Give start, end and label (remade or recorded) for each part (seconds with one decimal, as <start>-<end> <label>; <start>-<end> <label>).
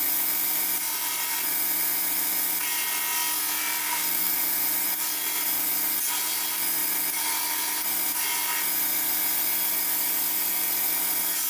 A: 0.0-3.8 recorded; 3.8-4.3 remade; 4.3-11.5 recorded